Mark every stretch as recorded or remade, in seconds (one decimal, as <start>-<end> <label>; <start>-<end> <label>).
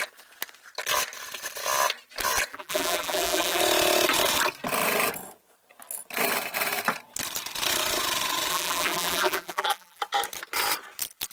0.0-2.5 recorded; 2.5-3.6 remade; 3.6-8.5 recorded; 8.5-10.0 remade; 10.0-11.3 recorded